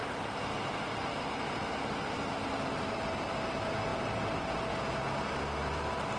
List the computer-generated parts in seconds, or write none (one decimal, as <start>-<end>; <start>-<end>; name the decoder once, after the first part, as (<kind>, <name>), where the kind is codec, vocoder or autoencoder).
none